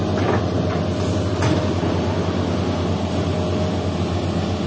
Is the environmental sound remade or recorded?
recorded